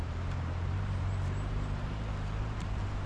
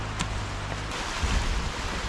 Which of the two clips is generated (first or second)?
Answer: first